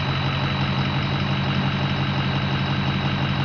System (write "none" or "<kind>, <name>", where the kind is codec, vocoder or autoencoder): none